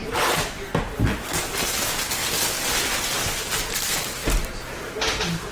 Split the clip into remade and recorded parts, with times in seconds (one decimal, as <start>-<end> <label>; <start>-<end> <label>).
0.0-5.5 recorded